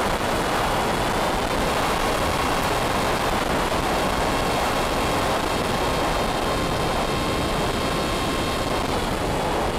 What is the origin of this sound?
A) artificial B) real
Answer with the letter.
B